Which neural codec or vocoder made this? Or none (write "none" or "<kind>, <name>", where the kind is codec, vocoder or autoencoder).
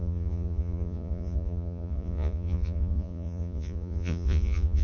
vocoder, Vocos